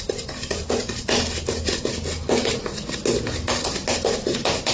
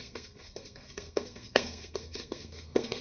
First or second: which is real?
first